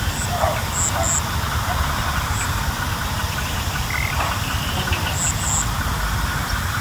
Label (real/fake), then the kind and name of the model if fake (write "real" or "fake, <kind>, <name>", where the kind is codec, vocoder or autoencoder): real